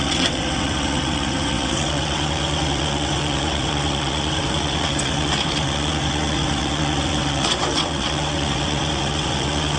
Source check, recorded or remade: remade